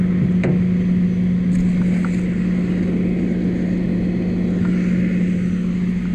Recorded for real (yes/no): yes